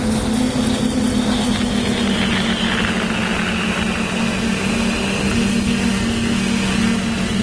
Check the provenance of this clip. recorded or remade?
recorded